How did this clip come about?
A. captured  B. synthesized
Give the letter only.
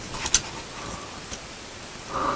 A